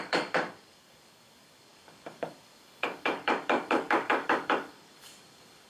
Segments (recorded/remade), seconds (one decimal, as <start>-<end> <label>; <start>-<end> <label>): 0.0-5.7 remade